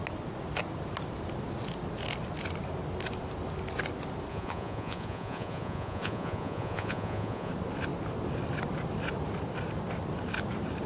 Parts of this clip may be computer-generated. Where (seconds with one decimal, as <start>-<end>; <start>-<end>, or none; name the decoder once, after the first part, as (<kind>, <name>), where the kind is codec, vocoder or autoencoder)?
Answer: 4.3-7.5 (vocoder, Vocos)